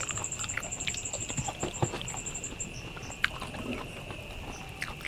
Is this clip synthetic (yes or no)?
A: no